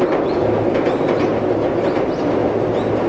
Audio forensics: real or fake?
real